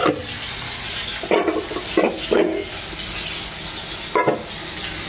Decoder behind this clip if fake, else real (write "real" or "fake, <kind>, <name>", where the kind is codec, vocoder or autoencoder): real